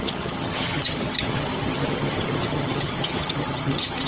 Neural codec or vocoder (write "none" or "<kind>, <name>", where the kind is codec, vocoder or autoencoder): vocoder, HiFi-GAN